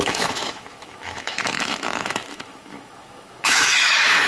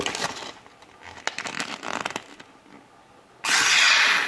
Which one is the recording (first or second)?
second